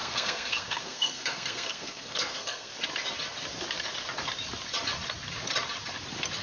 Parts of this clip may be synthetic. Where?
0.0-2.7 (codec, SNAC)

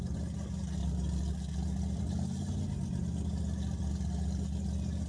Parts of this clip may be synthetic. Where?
none

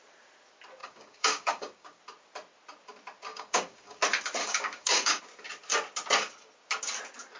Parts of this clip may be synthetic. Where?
0.8-2.0 (codec, DAC); 3.3-4.0; 4.4-5.2